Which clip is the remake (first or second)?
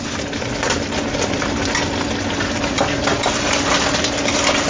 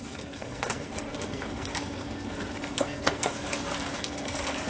second